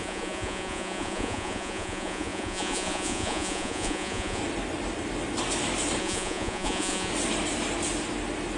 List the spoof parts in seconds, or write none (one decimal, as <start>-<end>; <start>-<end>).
0.0-4.4; 6.0-7.1